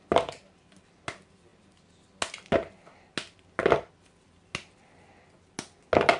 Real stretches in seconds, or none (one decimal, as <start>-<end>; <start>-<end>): 0.0-6.2

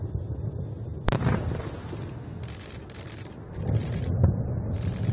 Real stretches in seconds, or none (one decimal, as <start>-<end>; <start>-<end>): 0.0-5.1

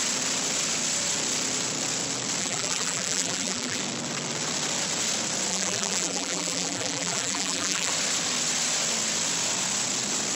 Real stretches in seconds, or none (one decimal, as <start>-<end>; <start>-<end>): 0.0-2.4; 3.8-5.5; 7.9-10.3

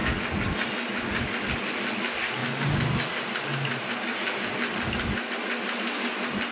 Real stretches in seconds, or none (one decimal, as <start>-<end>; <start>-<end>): 0.0-6.5

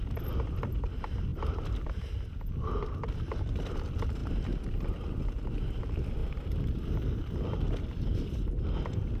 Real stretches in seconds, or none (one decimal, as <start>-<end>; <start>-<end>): 0.0-1.3; 1.9-6.2; 8.5-9.2